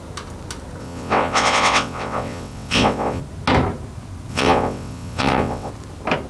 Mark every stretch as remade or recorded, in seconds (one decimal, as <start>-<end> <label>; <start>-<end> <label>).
0.0-0.8 recorded; 0.8-3.2 remade; 3.2-4.3 recorded; 4.3-5.7 remade; 5.7-6.3 recorded